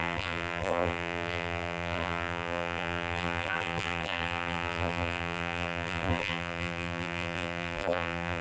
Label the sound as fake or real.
fake